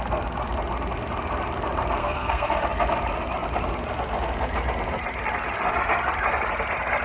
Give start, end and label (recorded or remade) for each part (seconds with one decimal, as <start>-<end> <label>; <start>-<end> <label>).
0.0-2.0 recorded; 2.0-2.5 remade; 2.5-7.0 recorded